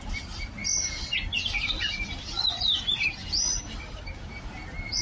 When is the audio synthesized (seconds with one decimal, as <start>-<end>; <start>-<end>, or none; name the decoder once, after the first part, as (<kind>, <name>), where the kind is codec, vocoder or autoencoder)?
none